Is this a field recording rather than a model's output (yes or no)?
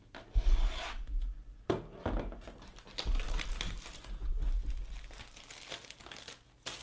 yes